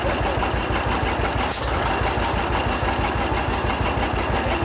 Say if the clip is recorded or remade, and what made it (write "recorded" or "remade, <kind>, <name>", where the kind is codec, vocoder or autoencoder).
recorded